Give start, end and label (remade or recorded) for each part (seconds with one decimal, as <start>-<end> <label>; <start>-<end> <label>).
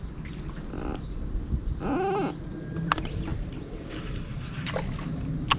0.0-3.3 recorded; 3.3-3.9 remade; 3.9-5.6 recorded